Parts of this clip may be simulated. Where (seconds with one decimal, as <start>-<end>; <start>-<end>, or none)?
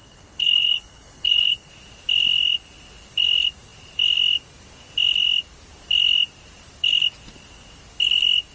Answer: 0.0-1.7